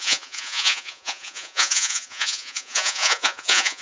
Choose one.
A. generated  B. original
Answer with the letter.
A